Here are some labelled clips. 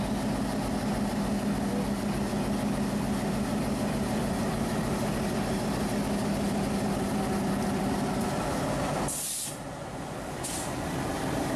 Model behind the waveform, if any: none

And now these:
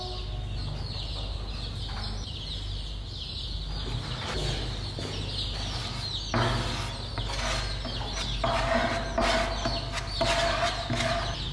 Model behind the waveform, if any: none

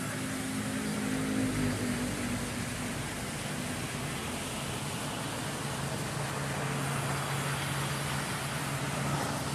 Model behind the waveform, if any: none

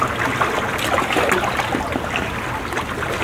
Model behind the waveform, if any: none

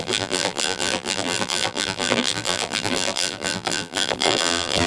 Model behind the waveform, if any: vocoder, BigVGAN v2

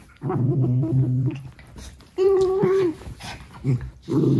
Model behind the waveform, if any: vocoder, BigVGAN v2